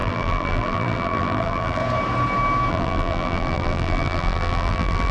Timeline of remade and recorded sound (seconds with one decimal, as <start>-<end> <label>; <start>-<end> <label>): 0.0-1.8 remade; 1.8-2.7 recorded; 2.7-5.1 remade